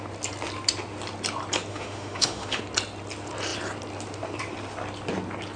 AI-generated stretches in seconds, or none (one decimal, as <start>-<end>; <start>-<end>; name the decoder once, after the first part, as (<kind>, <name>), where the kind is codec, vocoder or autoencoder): 1.7-2.6 (autoencoder, DAC-VAE)